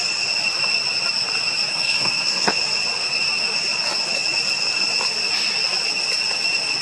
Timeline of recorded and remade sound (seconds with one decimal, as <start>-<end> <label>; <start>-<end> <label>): 0.0-1.7 recorded; 1.7-2.5 remade; 2.5-6.8 recorded